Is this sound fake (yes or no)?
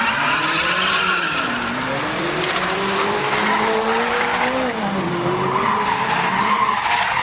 yes